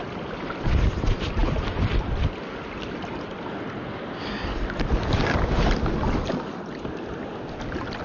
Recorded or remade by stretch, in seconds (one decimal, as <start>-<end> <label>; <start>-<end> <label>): 0.0-8.0 recorded